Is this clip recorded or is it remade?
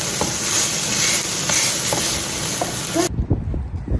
recorded